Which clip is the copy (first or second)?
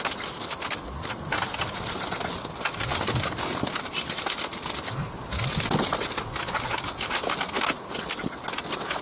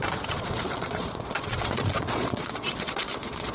second